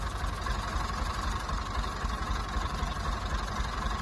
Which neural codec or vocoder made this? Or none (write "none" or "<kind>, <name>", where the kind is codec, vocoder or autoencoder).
none